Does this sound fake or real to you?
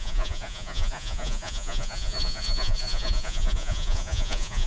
fake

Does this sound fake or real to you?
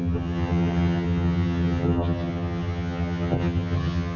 fake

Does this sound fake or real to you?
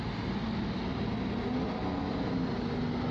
real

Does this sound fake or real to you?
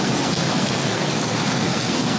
fake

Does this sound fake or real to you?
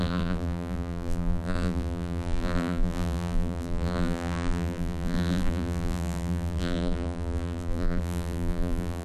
fake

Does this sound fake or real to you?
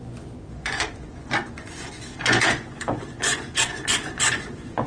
fake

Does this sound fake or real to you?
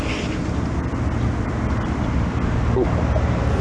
real